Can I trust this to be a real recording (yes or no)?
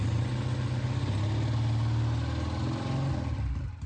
yes